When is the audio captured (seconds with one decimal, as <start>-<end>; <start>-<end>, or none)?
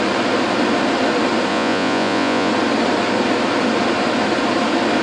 0.0-1.5; 2.5-5.0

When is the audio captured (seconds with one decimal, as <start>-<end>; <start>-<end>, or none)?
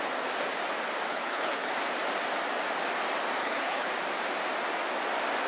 0.0-1.1; 1.7-3.4; 3.9-5.5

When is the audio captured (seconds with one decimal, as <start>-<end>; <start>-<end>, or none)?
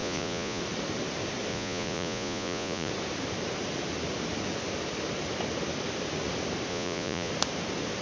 0.6-1.5; 2.9-6.7; 7.3-8.0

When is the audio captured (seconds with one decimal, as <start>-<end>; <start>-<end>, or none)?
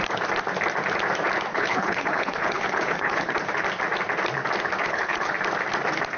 0.0-1.5; 3.3-4.8; 5.3-6.2